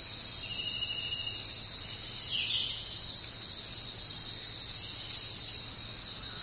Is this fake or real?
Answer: real